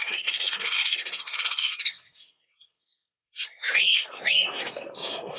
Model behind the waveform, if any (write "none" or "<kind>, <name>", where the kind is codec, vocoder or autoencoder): codec, SNAC